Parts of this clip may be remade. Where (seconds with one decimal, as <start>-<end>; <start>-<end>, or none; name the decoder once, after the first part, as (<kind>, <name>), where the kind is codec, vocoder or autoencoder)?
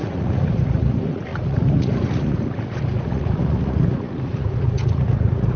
0.0-5.6 (vocoder, Vocos)